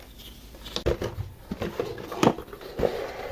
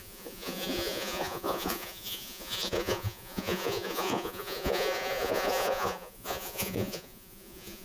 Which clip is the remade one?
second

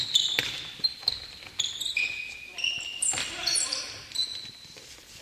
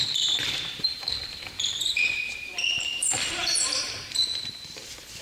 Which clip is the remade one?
second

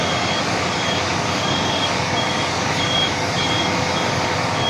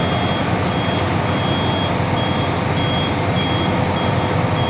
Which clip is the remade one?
first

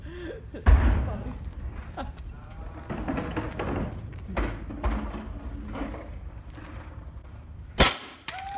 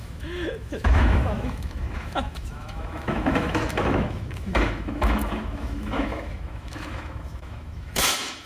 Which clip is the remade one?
second